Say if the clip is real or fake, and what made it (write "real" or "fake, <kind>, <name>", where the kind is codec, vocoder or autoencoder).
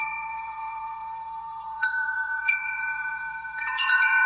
fake, vocoder, WaveNeXt